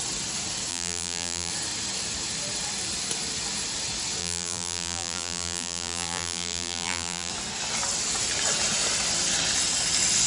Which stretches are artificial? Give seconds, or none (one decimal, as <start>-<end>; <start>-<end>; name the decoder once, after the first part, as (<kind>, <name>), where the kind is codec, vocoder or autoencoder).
0.7-1.5 (vocoder, BigVGAN v2); 4.2-7.3